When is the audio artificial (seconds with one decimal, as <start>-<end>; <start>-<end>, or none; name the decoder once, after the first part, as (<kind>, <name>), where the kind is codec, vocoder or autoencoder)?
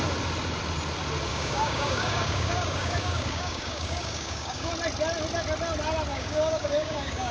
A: 1.3-4.7 (codec, DAC); 6.1-7.3